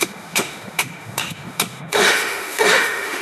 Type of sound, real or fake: fake